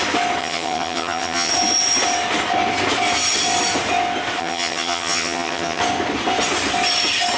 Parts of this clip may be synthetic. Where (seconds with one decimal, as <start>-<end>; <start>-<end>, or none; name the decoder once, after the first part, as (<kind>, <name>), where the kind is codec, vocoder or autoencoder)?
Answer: 0.4-1.5 (vocoder, HiFi-GAN); 4.4-5.8